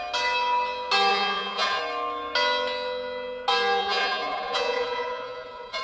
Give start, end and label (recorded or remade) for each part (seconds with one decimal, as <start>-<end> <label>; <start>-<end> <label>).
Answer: 0.0-1.1 recorded; 1.1-1.8 remade; 1.8-3.8 recorded; 3.8-5.8 remade